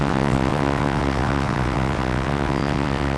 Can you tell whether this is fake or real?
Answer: fake